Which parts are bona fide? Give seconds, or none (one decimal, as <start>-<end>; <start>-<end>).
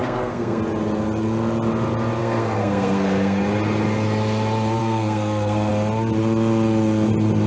0.6-2.2; 3.4-4.8; 5.7-7.5